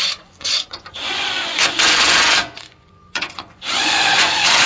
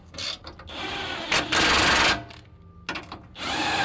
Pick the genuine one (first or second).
second